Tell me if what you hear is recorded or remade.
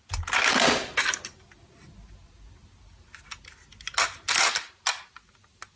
recorded